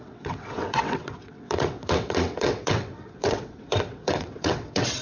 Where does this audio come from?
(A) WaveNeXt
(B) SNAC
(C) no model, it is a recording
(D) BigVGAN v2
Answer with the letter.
A